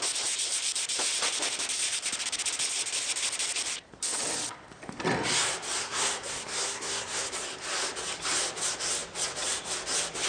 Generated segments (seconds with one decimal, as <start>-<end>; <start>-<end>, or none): 5.8-7.3